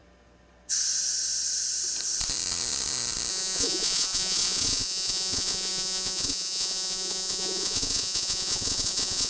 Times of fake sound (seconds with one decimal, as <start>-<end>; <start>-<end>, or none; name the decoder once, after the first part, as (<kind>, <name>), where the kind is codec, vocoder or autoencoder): 3.3-9.3 (vocoder, Vocos)